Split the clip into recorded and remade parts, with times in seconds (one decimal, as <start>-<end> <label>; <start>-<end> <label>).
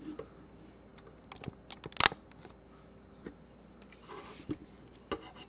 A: 0.0-5.5 recorded